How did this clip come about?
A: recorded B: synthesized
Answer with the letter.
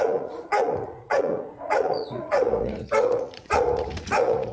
B